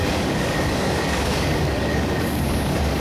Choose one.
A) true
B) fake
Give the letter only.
B